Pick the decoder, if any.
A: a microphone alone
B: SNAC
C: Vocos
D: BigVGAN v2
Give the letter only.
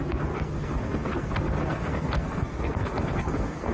B